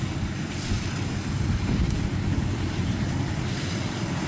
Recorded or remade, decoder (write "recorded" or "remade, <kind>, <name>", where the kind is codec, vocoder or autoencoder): recorded